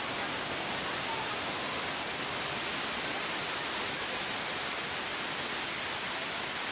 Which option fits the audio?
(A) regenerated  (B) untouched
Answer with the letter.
B